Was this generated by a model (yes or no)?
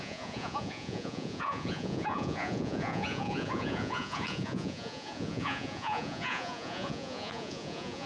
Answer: yes